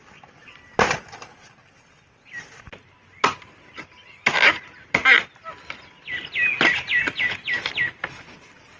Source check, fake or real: real